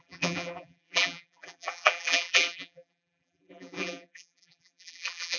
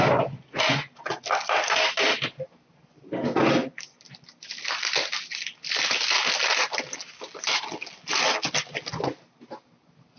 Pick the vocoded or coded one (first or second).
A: first